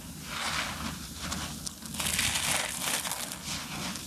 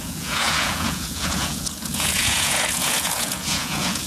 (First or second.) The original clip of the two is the first